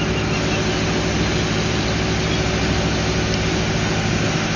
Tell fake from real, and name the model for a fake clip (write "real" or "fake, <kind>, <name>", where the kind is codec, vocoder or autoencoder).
real